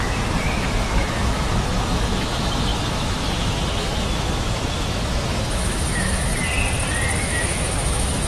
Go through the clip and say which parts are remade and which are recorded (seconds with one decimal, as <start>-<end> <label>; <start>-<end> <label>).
0.0-6.3 remade; 6.3-7.2 recorded; 7.2-8.3 remade